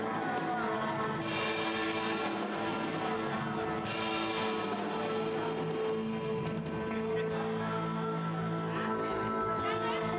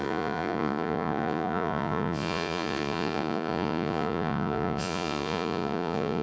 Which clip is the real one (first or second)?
first